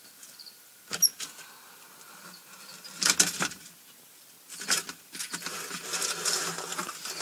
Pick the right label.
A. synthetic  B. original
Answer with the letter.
B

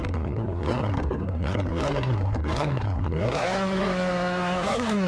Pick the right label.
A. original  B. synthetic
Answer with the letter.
B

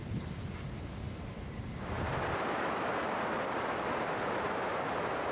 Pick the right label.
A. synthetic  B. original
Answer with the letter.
A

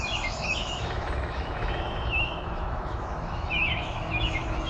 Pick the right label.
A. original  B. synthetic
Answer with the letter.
B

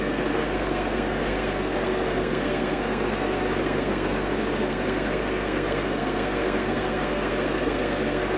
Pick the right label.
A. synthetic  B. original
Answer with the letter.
A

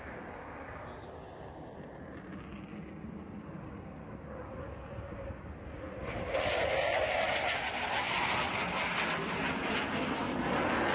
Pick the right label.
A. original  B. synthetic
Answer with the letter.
A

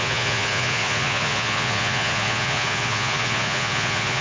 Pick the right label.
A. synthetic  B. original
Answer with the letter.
A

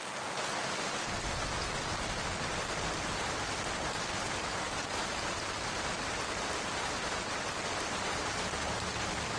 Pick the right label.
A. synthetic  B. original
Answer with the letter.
B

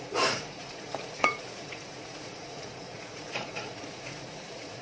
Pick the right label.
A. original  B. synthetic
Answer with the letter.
B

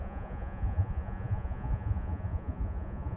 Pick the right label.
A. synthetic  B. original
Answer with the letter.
A